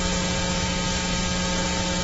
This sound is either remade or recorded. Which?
recorded